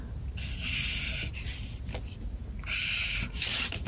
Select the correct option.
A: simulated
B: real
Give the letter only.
B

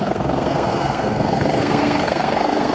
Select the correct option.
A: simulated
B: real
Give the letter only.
A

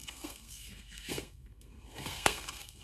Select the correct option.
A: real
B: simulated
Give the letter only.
B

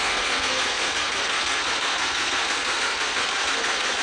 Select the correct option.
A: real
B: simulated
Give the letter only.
B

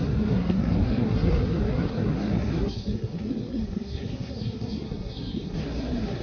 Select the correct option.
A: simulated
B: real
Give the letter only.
A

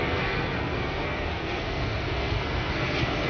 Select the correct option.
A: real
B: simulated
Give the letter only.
B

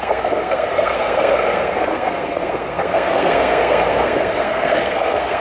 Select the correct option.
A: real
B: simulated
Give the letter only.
B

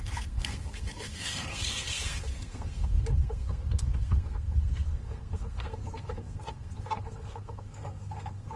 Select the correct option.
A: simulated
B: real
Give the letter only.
A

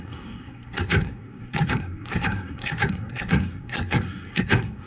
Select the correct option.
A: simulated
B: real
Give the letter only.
A